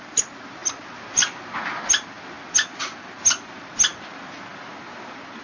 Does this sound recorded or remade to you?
recorded